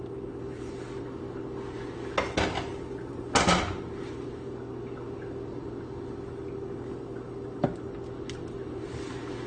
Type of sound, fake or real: real